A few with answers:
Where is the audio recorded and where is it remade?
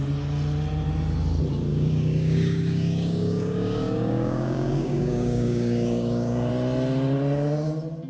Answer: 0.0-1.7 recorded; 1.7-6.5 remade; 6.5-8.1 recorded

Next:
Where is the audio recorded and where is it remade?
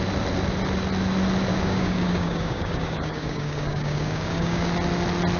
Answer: 0.0-1.5 recorded; 1.5-4.7 remade; 4.7-5.4 recorded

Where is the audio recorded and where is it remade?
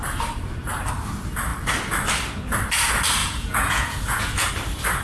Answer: 0.0-3.2 recorded; 3.2-4.5 remade; 4.5-5.0 recorded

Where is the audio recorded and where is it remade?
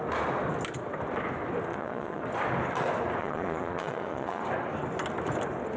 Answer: 0.0-1.7 recorded; 1.7-2.2 remade; 2.2-3.2 recorded; 3.2-4.4 remade; 4.4-5.8 recorded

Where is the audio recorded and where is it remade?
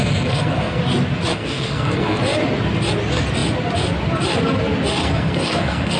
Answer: 0.0-0.8 remade; 0.8-1.3 recorded; 1.3-2.2 remade; 2.2-5.0 recorded; 5.0-6.0 remade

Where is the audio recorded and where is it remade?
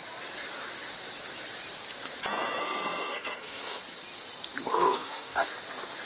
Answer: 0.0-2.6 recorded; 2.6-3.8 remade; 3.8-4.7 recorded; 4.7-5.5 remade; 5.5-6.1 recorded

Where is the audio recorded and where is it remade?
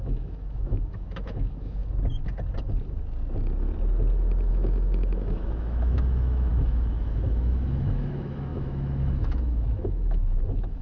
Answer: 0.0-1.8 remade; 1.8-4.5 recorded; 4.5-10.8 remade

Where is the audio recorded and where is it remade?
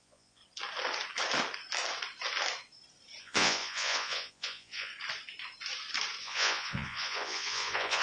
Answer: 0.0-0.4 remade; 0.4-3.2 recorded; 3.2-4.9 remade; 4.9-6.2 recorded; 6.2-8.0 remade